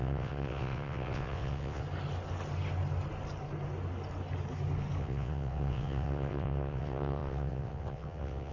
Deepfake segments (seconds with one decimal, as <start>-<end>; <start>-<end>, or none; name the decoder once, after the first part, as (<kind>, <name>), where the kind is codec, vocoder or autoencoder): 0.0-1.8 (vocoder, WaveNeXt); 5.0-8.5